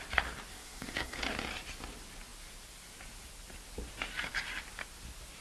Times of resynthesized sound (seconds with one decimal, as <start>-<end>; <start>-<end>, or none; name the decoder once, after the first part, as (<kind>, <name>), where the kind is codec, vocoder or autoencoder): 0.5-1.2 (codec, SNAC)